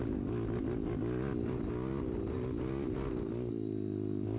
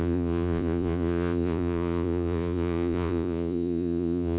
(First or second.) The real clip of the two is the first